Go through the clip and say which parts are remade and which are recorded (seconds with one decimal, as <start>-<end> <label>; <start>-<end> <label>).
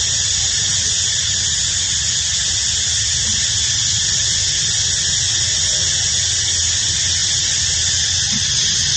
0.0-9.0 recorded